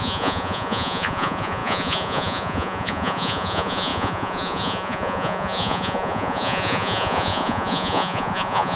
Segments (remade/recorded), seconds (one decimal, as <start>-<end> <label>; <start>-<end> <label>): 0.0-8.8 remade